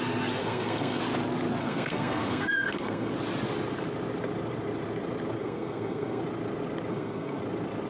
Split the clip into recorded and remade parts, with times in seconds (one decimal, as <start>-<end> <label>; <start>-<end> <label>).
0.0-0.4 recorded; 0.4-1.0 remade; 1.0-1.6 recorded; 1.6-3.1 remade; 3.1-5.4 recorded; 5.4-6.2 remade; 6.2-6.9 recorded; 6.9-7.4 remade; 7.4-7.9 recorded